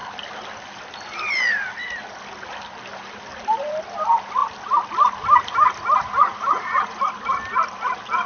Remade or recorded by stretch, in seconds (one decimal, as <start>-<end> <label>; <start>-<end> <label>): 0.0-6.3 recorded; 6.3-7.0 remade; 7.0-8.3 recorded